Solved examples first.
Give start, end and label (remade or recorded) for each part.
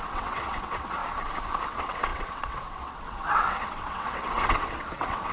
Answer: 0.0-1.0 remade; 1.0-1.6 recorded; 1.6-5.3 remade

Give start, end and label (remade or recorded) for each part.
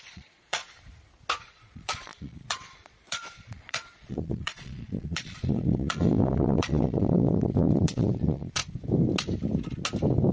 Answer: 0.0-0.6 remade; 0.6-1.4 recorded; 1.4-8.6 remade; 8.6-10.3 recorded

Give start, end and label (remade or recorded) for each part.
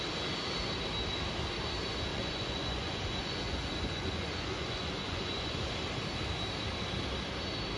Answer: 0.0-2.1 recorded; 2.1-5.7 remade; 5.7-7.8 recorded